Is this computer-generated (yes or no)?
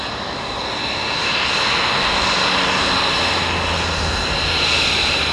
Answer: no